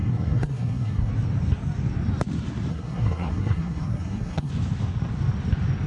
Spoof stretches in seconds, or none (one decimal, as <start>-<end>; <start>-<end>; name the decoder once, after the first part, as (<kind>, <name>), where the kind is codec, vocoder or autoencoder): 0.0-1.1 (codec, SNAC); 2.7-4.5